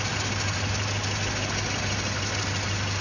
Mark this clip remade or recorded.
recorded